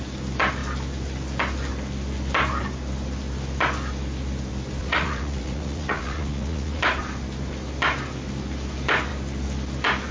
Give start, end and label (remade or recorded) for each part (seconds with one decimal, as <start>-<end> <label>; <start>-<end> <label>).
0.0-4.8 recorded; 4.8-6.8 remade; 6.8-10.1 recorded